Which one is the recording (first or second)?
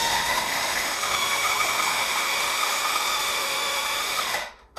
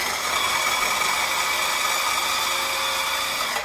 second